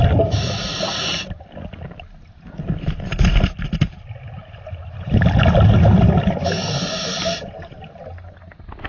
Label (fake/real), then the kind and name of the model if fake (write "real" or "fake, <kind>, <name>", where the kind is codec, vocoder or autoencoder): real